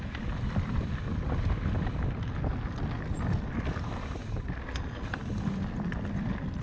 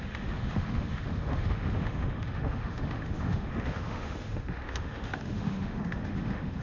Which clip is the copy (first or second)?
second